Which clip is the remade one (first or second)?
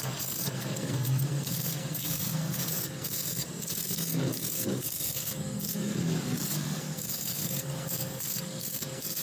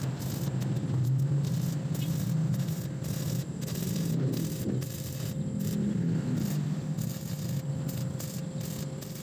first